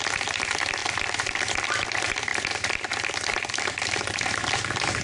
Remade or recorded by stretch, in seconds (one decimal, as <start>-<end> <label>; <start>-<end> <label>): 0.0-5.0 recorded